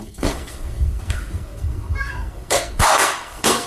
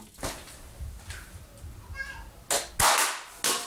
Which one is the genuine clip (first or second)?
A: second